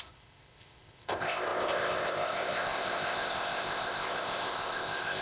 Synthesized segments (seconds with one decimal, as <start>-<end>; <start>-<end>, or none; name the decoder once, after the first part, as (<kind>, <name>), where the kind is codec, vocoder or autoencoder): 0.0-5.2 (codec, ZipCodec)